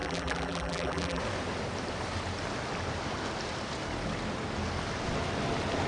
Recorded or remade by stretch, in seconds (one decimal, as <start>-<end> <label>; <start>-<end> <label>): 0.0-1.2 remade; 1.2-5.9 recorded